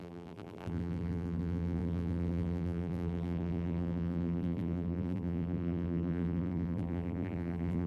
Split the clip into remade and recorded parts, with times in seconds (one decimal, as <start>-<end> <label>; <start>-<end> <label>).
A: 0.0-7.9 remade

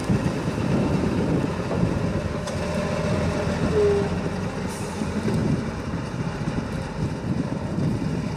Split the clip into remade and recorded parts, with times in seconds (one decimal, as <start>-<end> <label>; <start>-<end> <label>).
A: 0.0-2.0 remade; 2.0-5.4 recorded; 5.4-7.8 remade; 7.8-8.4 recorded

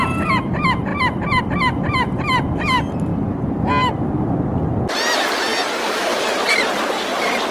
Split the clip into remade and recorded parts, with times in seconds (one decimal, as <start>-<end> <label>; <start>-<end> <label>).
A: 0.0-7.5 recorded

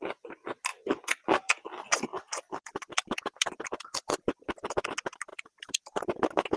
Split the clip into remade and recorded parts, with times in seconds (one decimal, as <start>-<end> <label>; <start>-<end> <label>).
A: 0.0-0.7 recorded; 0.7-4.2 remade; 4.2-5.3 recorded; 5.3-6.0 remade; 6.0-6.6 recorded

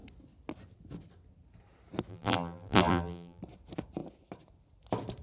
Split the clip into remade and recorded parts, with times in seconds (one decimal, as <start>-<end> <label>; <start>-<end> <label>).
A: 0.0-2.1 recorded; 2.1-3.4 remade; 3.4-5.2 recorded